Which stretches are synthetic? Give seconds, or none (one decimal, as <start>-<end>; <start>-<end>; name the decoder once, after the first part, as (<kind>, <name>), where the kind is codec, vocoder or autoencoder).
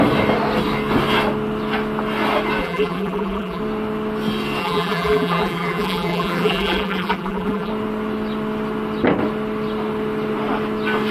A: 2.6-3.6 (vocoder, BigVGAN v2); 4.6-7.7